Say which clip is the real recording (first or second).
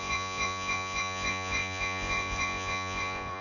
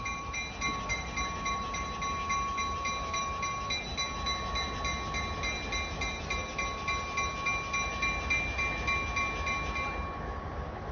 second